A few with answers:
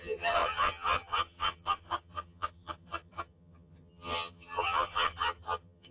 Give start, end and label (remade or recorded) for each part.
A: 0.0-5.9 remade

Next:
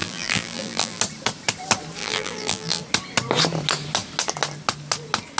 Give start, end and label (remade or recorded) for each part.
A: 0.0-1.0 remade; 1.0-2.0 recorded; 2.0-2.8 remade; 2.8-5.4 recorded

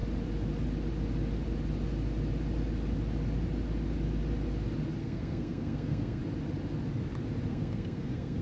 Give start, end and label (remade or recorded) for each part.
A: 0.0-5.0 recorded; 5.0-6.2 remade; 6.2-7.5 recorded; 7.5-8.4 remade

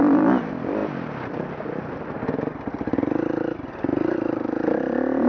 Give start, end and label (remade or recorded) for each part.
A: 0.0-3.9 recorded; 3.9-5.3 remade

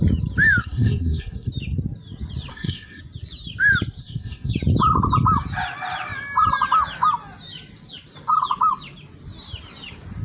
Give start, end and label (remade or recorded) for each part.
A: 0.0-0.6 recorded; 0.6-1.5 remade; 1.5-2.5 recorded; 2.5-3.0 remade; 3.0-4.0 recorded; 4.0-4.5 remade; 4.5-10.2 recorded